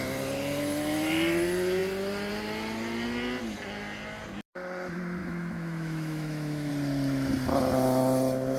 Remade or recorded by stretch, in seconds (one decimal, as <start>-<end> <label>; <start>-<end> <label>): 0.0-5.2 recorded; 5.2-6.7 remade; 6.7-8.6 recorded